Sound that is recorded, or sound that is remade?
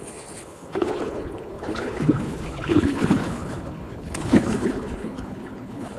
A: remade